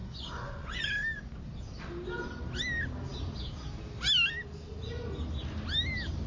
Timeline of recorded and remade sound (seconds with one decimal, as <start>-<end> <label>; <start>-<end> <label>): 0.0-0.9 remade; 0.9-6.3 recorded